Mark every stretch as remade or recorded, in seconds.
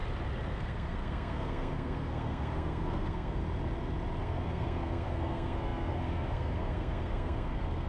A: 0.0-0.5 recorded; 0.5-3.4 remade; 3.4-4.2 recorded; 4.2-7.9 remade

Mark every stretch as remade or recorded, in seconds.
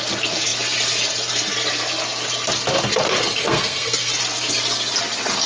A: 0.0-3.4 recorded; 3.4-4.1 remade; 4.1-5.5 recorded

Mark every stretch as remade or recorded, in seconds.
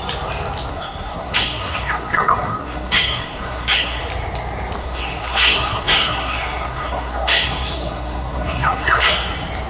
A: 0.0-0.7 recorded; 0.7-4.0 remade; 4.0-4.8 recorded; 4.8-9.1 remade; 9.1-9.7 recorded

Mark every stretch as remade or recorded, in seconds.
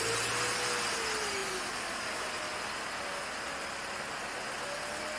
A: 0.0-5.2 recorded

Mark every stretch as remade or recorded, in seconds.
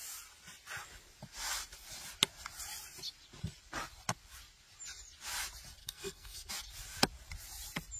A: 0.0-5.8 recorded; 5.8-6.5 remade; 6.5-8.0 recorded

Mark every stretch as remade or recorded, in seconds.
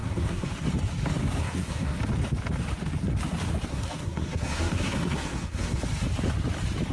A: 0.0-0.5 remade; 0.5-1.4 recorded; 1.4-2.0 remade; 2.0-3.7 recorded; 3.7-5.8 remade; 5.8-6.9 recorded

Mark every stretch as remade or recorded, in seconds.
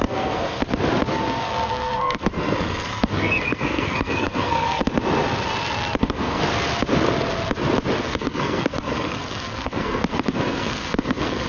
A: 0.0-0.6 remade; 0.6-1.1 recorded; 1.1-4.8 remade; 4.8-6.0 recorded; 6.0-6.4 remade; 6.4-8.0 recorded; 8.0-11.5 remade